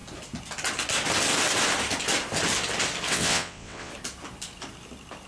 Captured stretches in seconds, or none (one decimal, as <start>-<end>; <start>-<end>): 0.0-3.1; 3.9-5.3